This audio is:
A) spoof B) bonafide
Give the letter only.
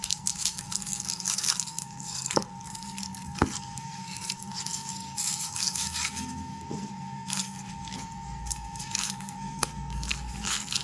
A